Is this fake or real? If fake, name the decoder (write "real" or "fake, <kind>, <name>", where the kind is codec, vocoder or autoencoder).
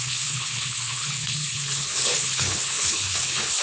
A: fake, codec, HILCodec